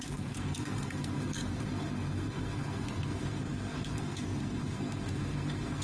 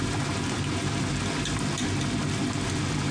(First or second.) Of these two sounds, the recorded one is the second